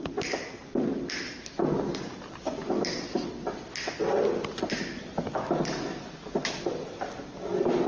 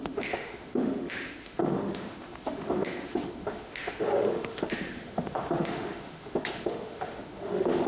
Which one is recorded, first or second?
first